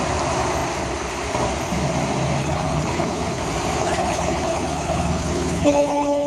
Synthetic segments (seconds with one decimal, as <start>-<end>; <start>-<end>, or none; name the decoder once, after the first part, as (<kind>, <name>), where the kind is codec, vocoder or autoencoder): 2.4-3.4 (codec, HILCodec); 3.8-6.3